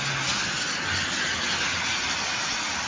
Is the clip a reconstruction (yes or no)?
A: no